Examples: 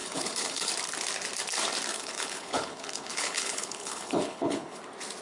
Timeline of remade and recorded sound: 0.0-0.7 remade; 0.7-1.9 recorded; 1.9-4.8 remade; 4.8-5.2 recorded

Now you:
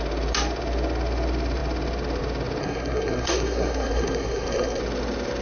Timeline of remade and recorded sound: 0.0-2.6 recorded; 2.6-4.8 remade; 4.8-5.4 recorded

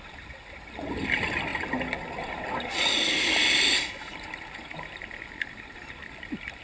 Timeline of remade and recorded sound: 0.0-6.6 recorded

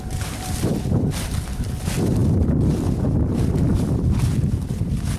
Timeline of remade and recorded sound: 0.0-0.7 remade; 0.7-1.3 recorded; 1.3-5.2 remade

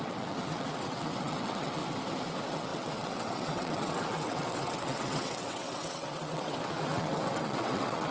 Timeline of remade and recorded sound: 0.0-1.8 remade; 1.8-2.3 recorded; 2.3-8.1 remade

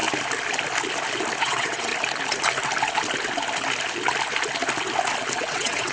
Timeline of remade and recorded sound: 0.0-1.4 recorded; 1.4-1.9 remade; 1.9-5.4 recorded; 5.4-5.9 remade

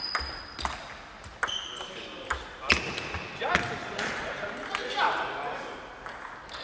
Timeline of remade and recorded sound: 0.0-3.8 recorded; 3.8-4.3 remade; 4.3-6.6 recorded